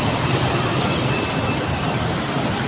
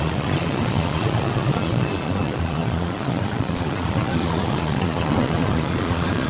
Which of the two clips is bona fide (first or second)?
first